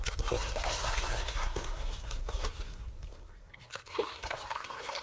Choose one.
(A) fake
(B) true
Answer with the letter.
A